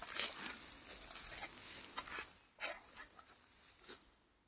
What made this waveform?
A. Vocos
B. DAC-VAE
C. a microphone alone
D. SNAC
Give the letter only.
C